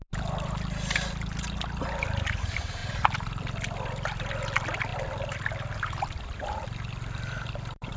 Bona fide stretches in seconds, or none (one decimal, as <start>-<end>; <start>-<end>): 0.0-8.0